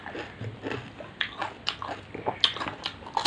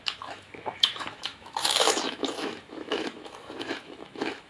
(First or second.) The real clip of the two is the first